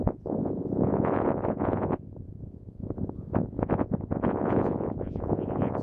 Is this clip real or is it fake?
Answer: fake